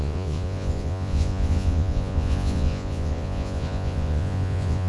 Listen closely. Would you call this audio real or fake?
fake